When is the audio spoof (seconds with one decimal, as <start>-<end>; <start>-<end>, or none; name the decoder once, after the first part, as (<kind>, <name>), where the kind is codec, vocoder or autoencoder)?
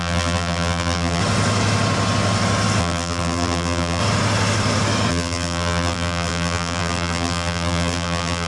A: 0.0-1.2 (vocoder, BigVGAN v2); 2.8-4.0; 5.1-8.5